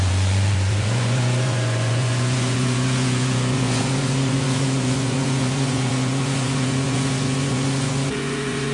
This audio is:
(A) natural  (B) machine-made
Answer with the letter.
B